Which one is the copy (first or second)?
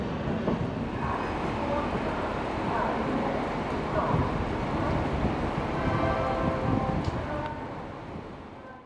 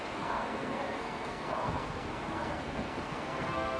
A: second